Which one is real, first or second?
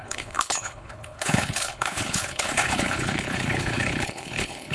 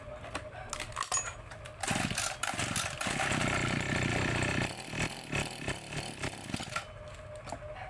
second